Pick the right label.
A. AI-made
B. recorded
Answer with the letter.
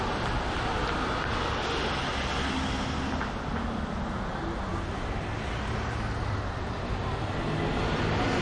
B